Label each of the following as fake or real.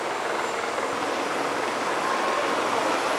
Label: real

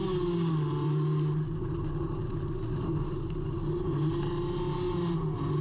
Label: real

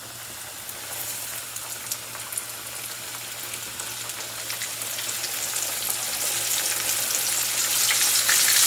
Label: real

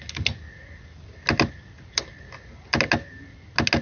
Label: real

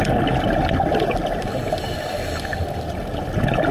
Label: real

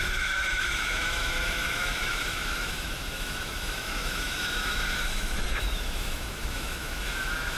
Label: fake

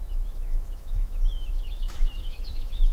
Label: fake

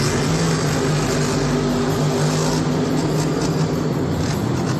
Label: real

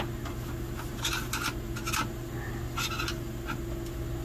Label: real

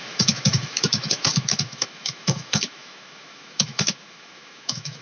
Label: fake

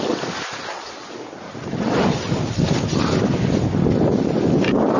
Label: real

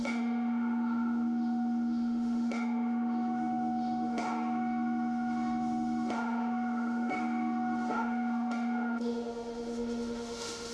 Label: fake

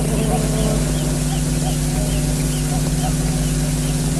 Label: real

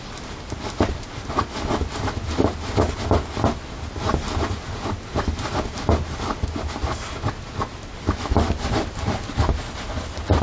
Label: real